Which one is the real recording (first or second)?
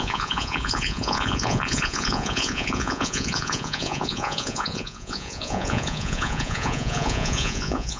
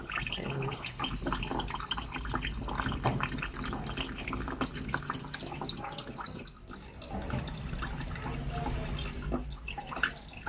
second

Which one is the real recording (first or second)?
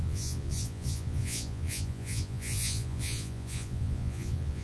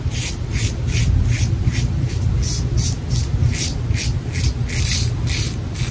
second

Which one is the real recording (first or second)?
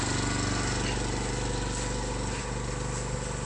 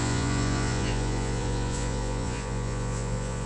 first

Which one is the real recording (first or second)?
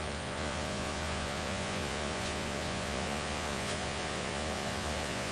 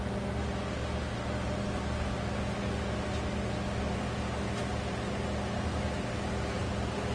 second